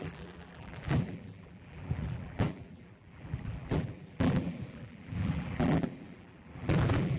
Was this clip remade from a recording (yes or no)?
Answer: yes